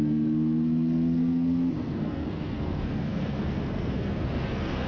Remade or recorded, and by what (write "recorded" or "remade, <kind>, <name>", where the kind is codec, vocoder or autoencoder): remade, codec, SNAC